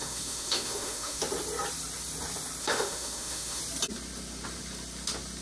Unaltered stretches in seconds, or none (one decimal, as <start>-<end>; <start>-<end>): 1.2-2.6; 3.6-5.4